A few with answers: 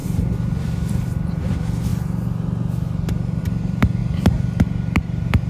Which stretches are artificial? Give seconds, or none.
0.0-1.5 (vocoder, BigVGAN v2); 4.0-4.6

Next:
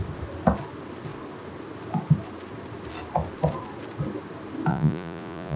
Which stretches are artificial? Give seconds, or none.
4.7-5.6 (vocoder, Vocos)

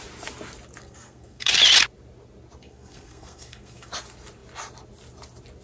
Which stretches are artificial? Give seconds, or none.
0.8-1.5 (codec, SNAC); 2.6-3.9

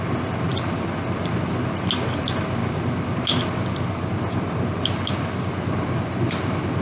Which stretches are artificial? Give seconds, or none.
none

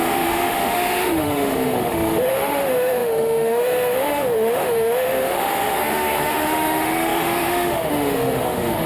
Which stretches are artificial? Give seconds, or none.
0.0-8.9 (autoencoder, DAC-VAE)

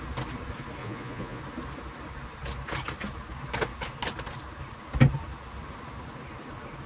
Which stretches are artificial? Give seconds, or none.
0.8-1.4 (vocoder, Vocos)